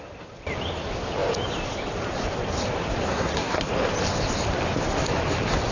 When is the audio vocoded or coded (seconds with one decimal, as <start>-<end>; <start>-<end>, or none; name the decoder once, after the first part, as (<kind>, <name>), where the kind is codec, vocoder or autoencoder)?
3.1-3.7 (codec, SNAC)